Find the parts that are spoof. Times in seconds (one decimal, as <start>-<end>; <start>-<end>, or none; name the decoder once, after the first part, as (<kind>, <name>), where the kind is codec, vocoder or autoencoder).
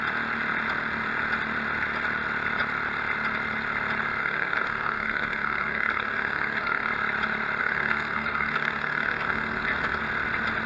4.2-6.9 (codec, SNAC); 7.6-10.0